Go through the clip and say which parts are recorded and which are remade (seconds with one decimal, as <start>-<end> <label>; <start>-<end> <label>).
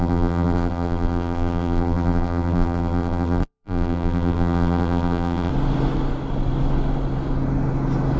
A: 0.0-5.5 remade; 5.5-8.2 recorded